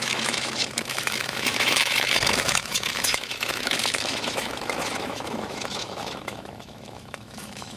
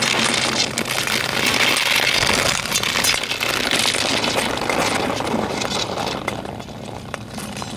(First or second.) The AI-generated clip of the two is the first